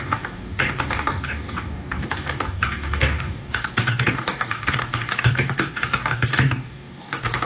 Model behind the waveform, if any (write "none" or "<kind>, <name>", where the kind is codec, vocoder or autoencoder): codec, DAC